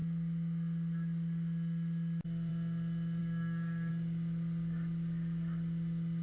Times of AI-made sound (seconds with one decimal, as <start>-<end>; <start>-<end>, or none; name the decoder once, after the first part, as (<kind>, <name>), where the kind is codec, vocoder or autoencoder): 3.2-3.9 (codec, DAC)